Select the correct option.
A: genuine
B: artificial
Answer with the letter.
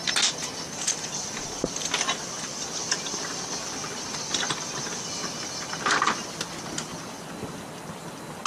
A